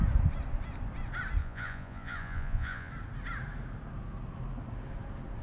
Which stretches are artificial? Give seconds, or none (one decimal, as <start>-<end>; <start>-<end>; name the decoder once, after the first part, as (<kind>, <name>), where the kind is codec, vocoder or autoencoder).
1.4-2.9 (vocoder, Vocos)